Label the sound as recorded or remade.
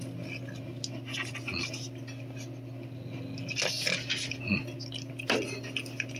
recorded